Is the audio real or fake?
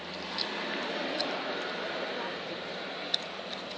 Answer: real